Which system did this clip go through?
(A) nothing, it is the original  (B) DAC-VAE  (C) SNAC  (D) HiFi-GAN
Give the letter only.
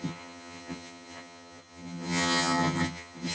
D